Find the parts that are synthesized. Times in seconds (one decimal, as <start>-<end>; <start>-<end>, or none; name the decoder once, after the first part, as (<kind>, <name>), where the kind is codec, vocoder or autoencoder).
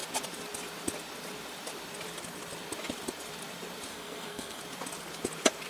3.9-4.6 (codec, SNAC)